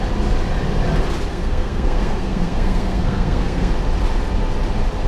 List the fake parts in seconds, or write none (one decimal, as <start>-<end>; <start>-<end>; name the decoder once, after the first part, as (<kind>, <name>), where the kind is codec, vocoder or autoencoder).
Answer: 1.3-3.7 (codec, SNAC)